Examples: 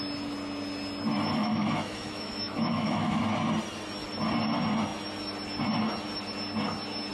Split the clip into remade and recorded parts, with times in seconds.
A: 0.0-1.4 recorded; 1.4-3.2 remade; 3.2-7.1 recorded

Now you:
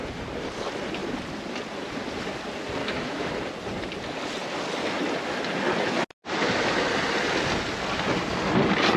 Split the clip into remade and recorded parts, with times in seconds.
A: 0.0-2.8 recorded; 2.8-3.3 remade; 3.3-9.0 recorded

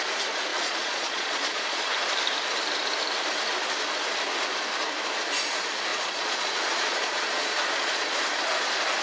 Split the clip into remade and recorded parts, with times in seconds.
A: 0.0-0.5 recorded; 0.5-1.8 remade; 1.8-5.9 recorded; 5.9-8.2 remade; 8.2-9.0 recorded

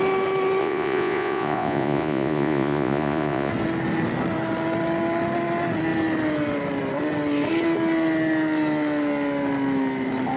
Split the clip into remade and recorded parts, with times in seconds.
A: 0.0-0.6 recorded; 0.6-3.5 remade; 3.5-10.4 recorded

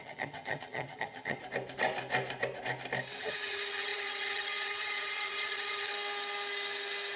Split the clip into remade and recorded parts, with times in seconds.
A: 0.0-1.4 remade; 1.4-3.2 recorded; 3.2-5.9 remade; 5.9-7.2 recorded

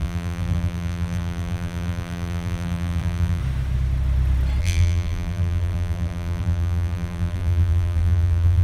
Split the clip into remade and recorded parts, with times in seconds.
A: 0.0-3.4 remade; 3.4-4.6 recorded; 4.6-8.6 remade